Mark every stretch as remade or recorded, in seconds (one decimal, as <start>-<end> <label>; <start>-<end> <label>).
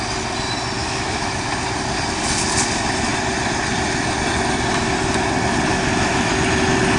0.0-0.8 recorded; 0.8-1.4 remade; 1.4-5.7 recorded; 5.7-6.3 remade; 6.3-7.0 recorded